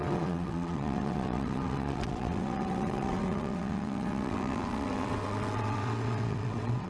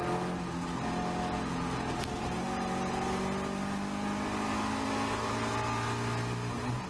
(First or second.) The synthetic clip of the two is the first